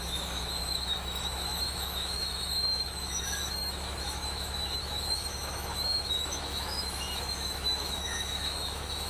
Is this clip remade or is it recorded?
remade